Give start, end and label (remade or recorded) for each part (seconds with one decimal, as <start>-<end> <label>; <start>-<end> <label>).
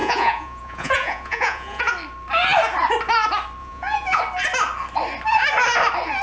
0.0-1.9 remade; 1.9-3.6 recorded; 3.6-4.2 remade; 4.2-6.2 recorded